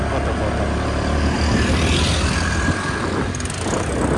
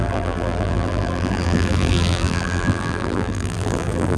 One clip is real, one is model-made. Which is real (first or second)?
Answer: first